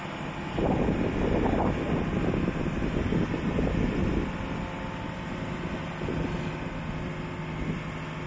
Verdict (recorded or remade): recorded